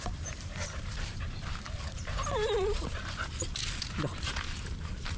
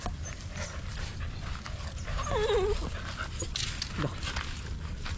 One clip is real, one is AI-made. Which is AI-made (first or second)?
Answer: first